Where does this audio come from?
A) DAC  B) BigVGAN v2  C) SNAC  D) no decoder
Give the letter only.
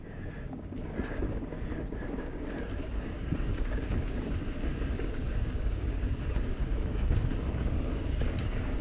A